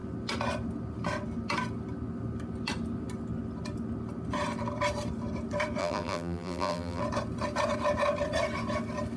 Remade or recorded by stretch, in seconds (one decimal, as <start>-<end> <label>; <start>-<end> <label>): 0.0-5.8 recorded; 5.8-7.0 remade; 7.0-9.2 recorded